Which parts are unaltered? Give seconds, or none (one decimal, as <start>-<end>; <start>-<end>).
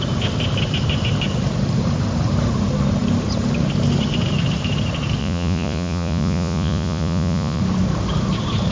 0.0-5.2; 7.6-8.7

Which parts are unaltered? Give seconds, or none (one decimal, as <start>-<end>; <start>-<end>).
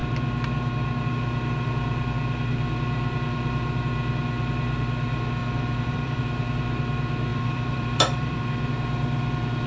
0.0-5.4; 6.2-7.3; 8.4-9.7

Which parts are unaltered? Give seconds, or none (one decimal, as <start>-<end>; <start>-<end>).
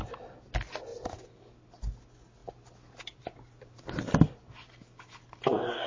0.0-5.9